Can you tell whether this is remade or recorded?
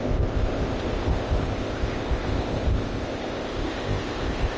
remade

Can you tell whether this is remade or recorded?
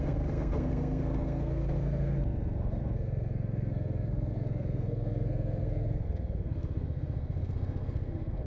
remade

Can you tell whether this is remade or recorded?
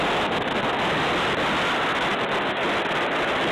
recorded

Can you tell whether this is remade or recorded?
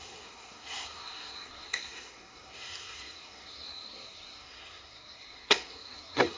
remade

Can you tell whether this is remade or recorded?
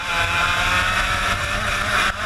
remade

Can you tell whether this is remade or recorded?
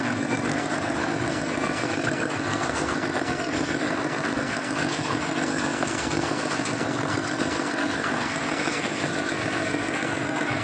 remade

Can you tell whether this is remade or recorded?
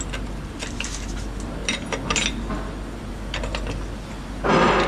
recorded